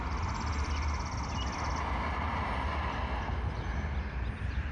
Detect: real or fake real